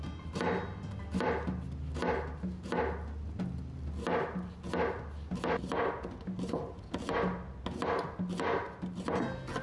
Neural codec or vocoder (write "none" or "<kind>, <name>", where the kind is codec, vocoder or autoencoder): none